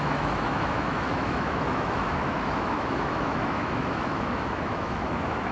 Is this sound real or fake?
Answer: fake